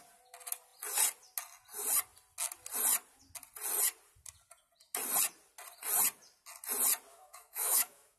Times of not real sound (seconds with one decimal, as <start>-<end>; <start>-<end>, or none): 7.1-8.2